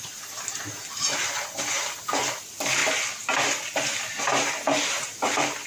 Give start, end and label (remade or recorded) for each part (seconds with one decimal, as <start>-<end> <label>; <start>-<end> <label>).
0.0-2.8 remade; 2.8-4.1 recorded; 4.1-5.7 remade